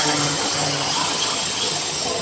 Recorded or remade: remade